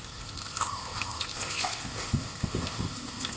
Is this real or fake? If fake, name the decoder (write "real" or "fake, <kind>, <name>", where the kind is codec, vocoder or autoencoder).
fake, codec, ZipCodec